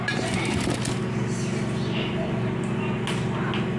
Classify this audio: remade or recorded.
recorded